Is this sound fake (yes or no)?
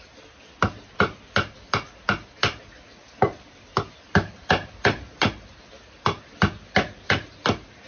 no